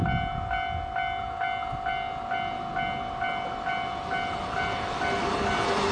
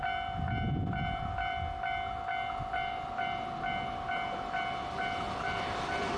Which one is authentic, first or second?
first